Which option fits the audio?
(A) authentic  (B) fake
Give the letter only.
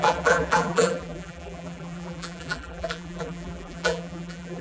B